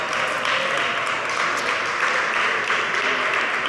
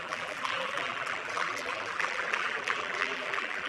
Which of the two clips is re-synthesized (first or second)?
second